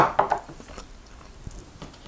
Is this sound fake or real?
real